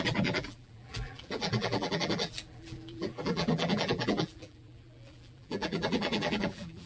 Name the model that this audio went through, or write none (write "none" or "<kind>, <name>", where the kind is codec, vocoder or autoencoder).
vocoder, BigVGAN v2